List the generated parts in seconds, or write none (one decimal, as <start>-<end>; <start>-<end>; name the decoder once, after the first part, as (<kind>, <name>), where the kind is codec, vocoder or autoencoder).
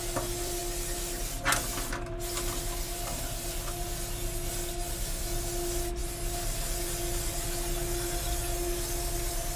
none